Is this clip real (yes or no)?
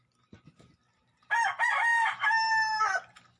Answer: yes